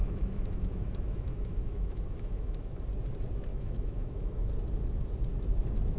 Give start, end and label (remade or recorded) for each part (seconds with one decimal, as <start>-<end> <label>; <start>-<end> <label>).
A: 0.0-2.8 remade; 2.8-3.5 recorded; 3.5-4.5 remade; 4.5-6.0 recorded